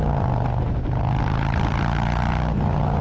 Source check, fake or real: real